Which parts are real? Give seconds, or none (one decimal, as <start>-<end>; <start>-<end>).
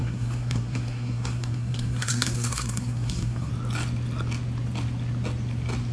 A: 3.5-5.9